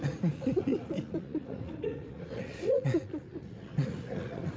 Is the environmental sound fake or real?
fake